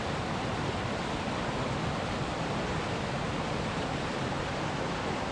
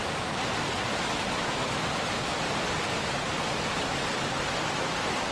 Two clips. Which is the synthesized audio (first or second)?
first